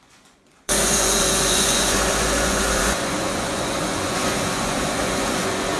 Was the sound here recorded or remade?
remade